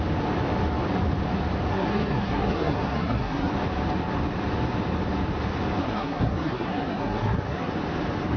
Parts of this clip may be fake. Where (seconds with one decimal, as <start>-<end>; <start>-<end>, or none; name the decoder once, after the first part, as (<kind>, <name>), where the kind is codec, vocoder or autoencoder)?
1.7-3.5 (codec, SNAC); 5.8-7.7